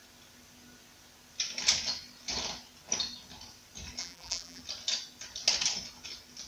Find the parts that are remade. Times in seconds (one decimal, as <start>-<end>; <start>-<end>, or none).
4.0-4.6